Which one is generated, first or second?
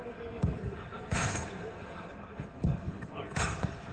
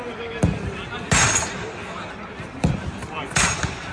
first